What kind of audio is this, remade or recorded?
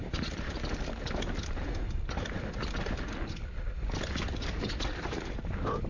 recorded